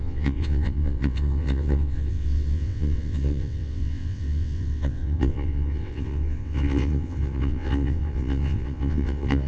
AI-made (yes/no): yes